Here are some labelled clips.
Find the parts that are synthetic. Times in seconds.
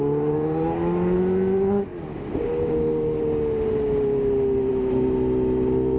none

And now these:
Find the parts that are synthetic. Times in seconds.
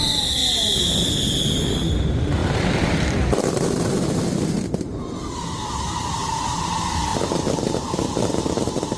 0.0-0.4 (vocoder, BigVGAN v2); 1.9-9.0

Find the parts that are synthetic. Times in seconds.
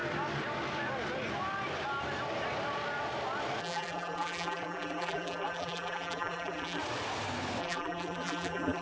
3.6-6.8 (vocoder, BigVGAN v2); 7.6-8.8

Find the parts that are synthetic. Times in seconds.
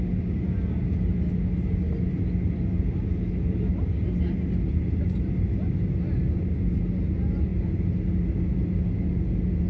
none